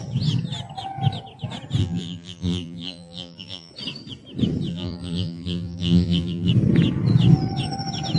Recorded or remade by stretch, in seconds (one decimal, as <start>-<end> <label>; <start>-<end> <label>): 0.0-1.8 recorded; 1.8-3.7 remade; 3.7-4.7 recorded; 4.7-6.5 remade; 6.5-8.2 recorded